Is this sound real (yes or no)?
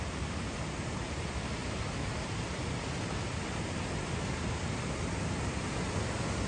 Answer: yes